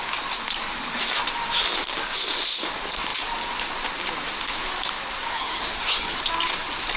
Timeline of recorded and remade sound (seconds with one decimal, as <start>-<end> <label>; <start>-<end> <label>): 0.0-5.3 recorded; 5.3-6.2 remade; 6.2-7.0 recorded